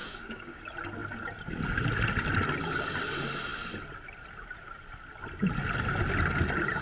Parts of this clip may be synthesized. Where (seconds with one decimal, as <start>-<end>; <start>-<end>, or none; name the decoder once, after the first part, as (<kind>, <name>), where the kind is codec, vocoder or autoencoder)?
0.0-0.6 (codec, DAC)